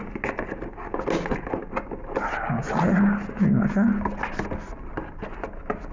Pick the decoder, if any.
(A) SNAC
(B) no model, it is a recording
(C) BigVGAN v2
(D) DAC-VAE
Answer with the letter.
B